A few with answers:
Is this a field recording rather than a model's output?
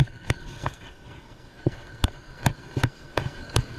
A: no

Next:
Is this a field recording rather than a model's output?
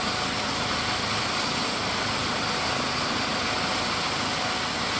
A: yes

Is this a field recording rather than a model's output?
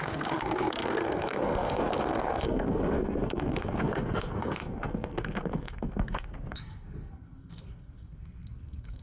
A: no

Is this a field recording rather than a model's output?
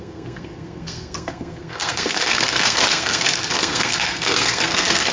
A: no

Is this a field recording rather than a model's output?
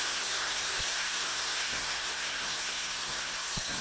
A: no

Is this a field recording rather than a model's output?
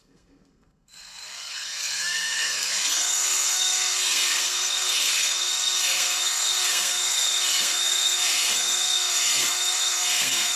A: no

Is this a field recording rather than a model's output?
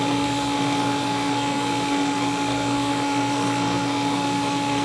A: no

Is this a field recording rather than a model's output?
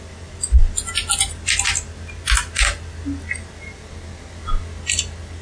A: yes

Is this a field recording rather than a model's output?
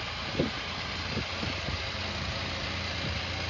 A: yes